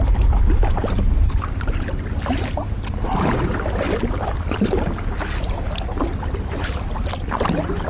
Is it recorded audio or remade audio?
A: recorded